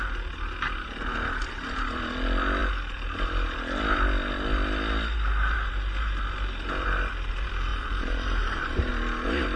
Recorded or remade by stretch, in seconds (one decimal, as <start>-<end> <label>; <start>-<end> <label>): 0.0-7.7 recorded; 7.7-8.9 remade; 8.9-9.6 recorded